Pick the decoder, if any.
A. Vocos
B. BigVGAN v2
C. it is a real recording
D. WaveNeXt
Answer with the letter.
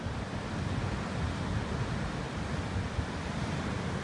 B